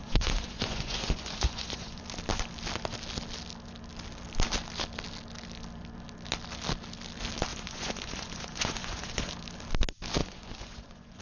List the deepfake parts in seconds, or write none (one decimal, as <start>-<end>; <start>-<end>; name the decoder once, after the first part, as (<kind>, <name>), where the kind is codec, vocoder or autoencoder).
0.0-2.0 (vocoder, Vocos); 7.5-9.3; 10.2-11.2